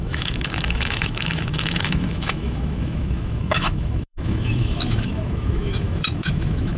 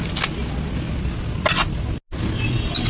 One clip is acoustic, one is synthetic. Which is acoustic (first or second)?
second